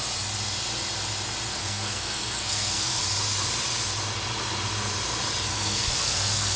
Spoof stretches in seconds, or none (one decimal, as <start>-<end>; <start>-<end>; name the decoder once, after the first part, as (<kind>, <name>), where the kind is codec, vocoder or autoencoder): 1.5-3.0 (codec, SNAC); 5.5-6.6